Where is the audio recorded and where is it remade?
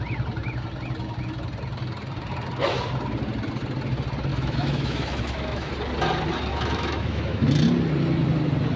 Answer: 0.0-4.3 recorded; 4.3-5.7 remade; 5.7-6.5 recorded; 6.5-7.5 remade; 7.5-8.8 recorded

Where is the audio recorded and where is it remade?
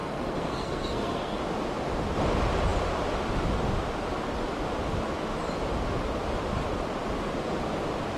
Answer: 0.0-1.4 remade; 1.4-8.2 recorded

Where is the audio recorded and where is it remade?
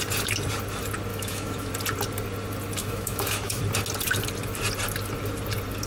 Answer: 0.0-1.1 recorded; 1.1-1.7 remade; 1.7-2.8 recorded; 2.8-3.6 remade; 3.6-5.9 recorded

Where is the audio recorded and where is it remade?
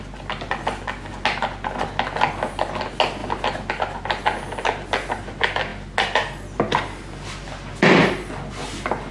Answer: 0.0-9.1 recorded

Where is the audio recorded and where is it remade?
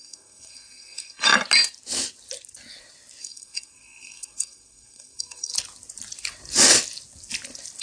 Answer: 0.0-1.3 remade; 1.3-3.2 recorded; 3.2-5.5 remade; 5.5-7.8 recorded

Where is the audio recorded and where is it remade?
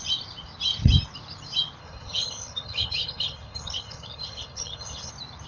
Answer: 0.0-1.8 recorded; 1.8-5.1 remade; 5.1-5.5 recorded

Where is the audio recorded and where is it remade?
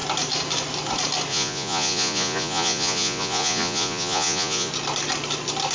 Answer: 0.0-1.3 recorded; 1.3-4.7 remade; 4.7-5.7 recorded